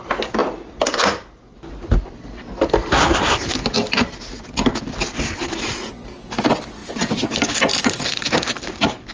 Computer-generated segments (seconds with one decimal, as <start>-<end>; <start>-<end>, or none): none